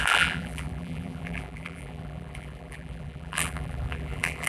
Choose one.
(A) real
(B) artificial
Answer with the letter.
B